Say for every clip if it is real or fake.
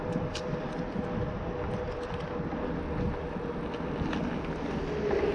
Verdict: real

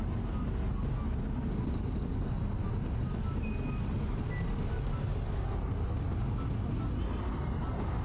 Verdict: real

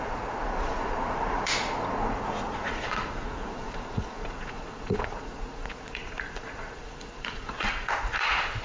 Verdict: fake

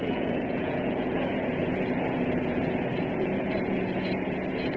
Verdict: fake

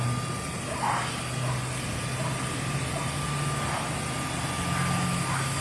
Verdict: real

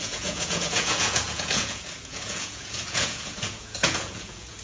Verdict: fake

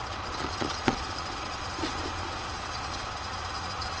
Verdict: fake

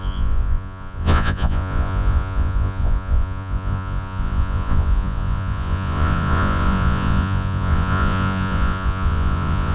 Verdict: fake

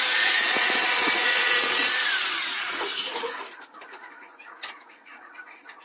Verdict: fake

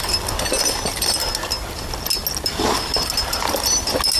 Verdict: real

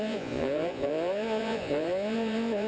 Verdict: fake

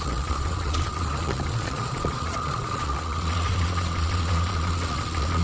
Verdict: fake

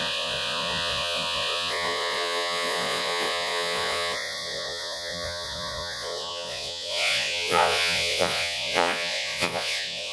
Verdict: fake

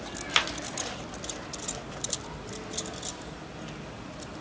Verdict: real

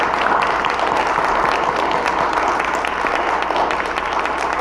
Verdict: real